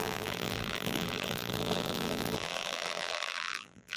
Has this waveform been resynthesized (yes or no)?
yes